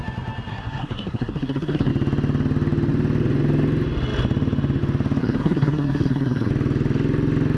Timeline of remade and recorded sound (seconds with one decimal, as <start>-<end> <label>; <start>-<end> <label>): 0.0-0.5 recorded; 0.5-1.9 remade; 1.9-5.2 recorded; 5.2-6.5 remade; 6.5-7.6 recorded